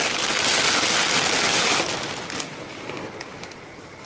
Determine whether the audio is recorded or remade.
recorded